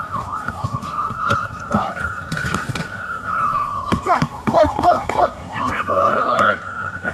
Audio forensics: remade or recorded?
remade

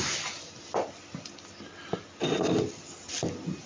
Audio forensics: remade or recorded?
recorded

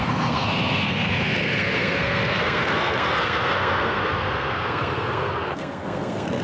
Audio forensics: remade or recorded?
remade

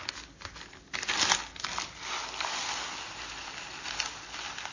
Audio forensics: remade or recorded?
recorded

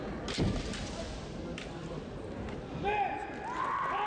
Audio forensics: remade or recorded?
recorded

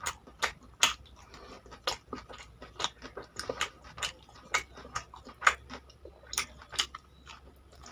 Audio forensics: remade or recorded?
recorded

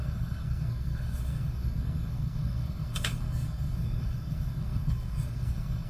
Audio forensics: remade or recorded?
remade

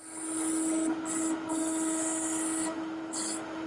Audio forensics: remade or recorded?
recorded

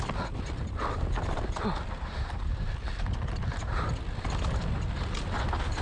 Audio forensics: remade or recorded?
recorded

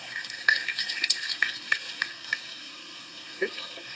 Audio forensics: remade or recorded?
remade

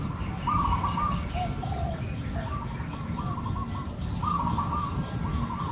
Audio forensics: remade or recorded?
recorded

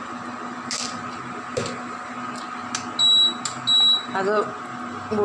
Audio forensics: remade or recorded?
recorded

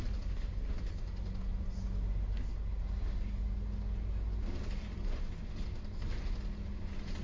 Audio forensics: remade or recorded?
recorded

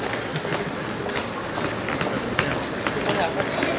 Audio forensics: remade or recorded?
recorded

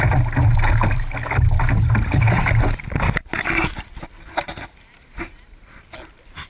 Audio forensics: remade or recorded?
recorded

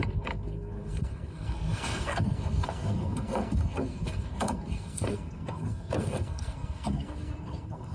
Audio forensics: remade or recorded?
remade